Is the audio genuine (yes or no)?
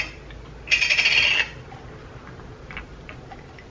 yes